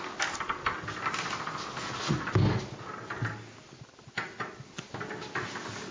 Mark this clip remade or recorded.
recorded